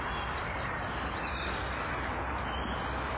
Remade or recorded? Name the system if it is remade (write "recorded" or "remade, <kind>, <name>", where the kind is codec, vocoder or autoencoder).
remade, vocoder, BigVGAN v2